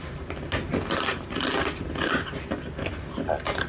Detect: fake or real real